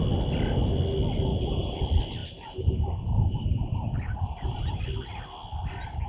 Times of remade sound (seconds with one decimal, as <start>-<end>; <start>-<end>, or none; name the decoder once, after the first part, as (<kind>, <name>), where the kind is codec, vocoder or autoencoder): 1.3-1.8 (vocoder, BigVGAN v2); 2.2-4.8